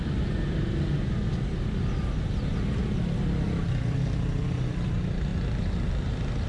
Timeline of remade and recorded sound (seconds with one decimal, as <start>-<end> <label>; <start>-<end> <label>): 0.0-6.5 recorded